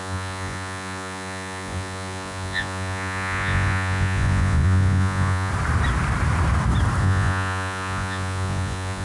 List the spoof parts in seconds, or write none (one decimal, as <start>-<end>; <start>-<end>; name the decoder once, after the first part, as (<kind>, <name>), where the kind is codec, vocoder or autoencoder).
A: 0.0-5.5 (vocoder, Vocos); 7.0-9.0